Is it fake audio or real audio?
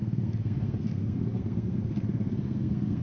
fake